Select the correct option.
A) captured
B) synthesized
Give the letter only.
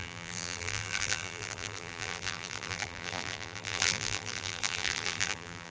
B